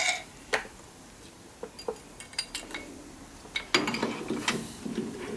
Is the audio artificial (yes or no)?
no